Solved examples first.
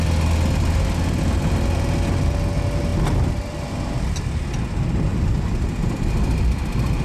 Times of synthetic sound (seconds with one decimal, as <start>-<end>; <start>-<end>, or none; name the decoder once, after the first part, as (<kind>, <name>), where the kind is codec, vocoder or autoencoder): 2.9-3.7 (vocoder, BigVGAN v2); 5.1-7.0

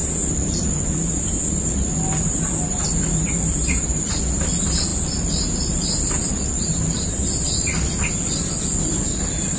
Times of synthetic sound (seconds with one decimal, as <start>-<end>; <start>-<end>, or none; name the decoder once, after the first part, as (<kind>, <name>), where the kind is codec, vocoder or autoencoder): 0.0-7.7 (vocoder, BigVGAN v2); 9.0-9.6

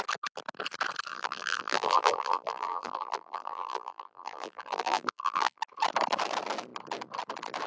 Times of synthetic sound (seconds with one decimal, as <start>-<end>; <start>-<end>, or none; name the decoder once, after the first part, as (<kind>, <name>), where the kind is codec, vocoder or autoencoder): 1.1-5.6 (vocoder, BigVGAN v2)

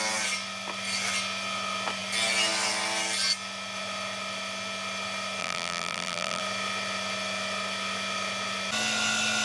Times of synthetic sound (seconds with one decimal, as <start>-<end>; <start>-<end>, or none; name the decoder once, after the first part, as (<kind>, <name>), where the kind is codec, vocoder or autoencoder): 5.4-6.4 (vocoder, BigVGAN v2)